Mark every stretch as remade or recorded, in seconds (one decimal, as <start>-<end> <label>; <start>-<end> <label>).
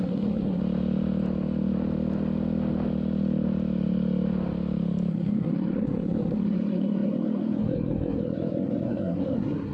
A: 0.0-0.6 remade; 0.6-5.1 recorded; 5.1-9.7 remade